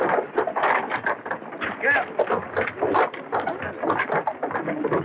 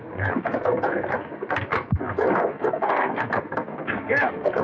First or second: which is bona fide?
first